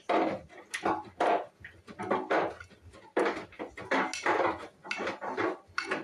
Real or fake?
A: real